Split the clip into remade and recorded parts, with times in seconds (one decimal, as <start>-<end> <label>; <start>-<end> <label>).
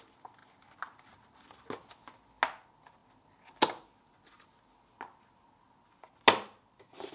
0.0-7.1 recorded